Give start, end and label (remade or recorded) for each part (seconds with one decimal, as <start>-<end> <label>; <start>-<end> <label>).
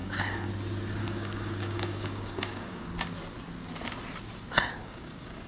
0.0-0.5 remade; 0.5-1.0 recorded; 1.0-2.9 remade; 2.9-4.8 recorded; 4.8-5.5 remade